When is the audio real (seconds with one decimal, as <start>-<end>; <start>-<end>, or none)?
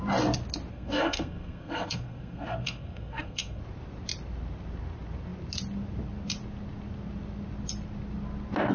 0.0-0.7; 3.6-8.7